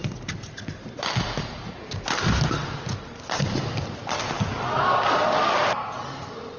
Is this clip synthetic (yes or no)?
no